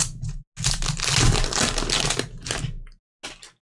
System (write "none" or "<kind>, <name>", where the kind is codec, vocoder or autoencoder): none